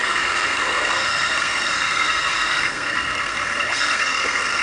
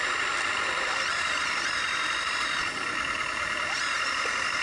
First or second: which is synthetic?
first